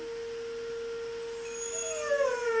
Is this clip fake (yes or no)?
no